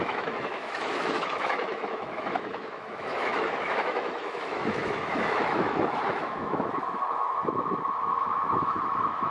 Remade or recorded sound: remade